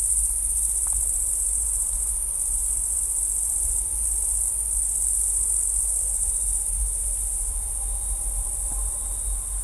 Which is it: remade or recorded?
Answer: recorded